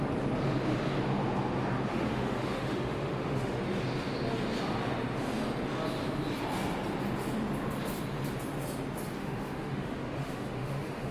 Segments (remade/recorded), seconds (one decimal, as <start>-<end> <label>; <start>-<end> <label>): 0.0-1.9 recorded; 1.9-3.6 remade; 3.6-9.2 recorded; 9.2-11.1 remade